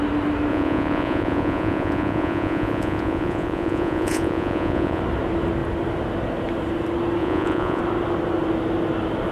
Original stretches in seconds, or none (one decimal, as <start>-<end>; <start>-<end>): 0.0-0.5; 5.0-7.2; 7.8-9.3

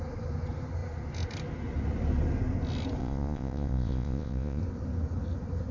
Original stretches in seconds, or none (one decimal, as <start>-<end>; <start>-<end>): 0.0-3.0; 4.6-5.7

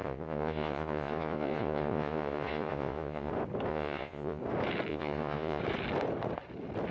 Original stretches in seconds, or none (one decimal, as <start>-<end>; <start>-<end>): 3.3-3.7; 4.4-4.9; 5.6-6.9